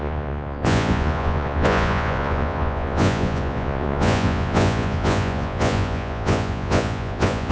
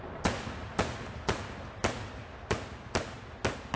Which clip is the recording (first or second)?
second